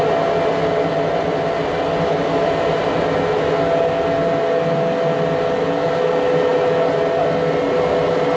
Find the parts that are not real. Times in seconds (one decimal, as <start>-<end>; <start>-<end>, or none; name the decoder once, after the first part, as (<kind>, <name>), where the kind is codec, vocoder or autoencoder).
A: none